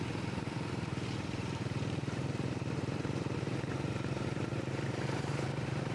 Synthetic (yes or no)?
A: yes